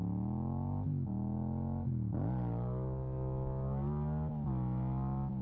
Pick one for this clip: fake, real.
real